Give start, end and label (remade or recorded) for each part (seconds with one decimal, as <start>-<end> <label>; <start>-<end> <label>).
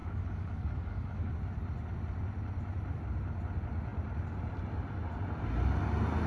0.0-1.3 remade; 1.3-6.3 recorded